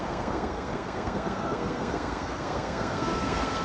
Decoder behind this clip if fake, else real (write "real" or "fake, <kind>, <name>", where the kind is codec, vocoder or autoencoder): fake, codec, SNAC